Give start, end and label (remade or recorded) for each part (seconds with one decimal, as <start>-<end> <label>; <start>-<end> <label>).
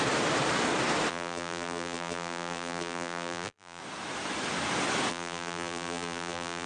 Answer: 0.0-1.1 recorded; 1.1-3.8 remade; 3.8-5.1 recorded; 5.1-6.7 remade